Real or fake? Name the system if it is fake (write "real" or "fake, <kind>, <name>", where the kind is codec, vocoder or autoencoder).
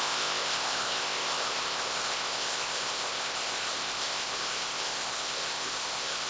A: fake, codec, ZipCodec